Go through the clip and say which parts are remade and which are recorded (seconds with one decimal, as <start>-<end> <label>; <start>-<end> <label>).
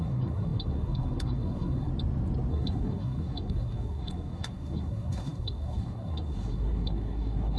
0.0-1.9 remade; 1.9-2.5 recorded; 2.5-7.6 remade